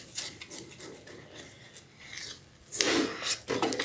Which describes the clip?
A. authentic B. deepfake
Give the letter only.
A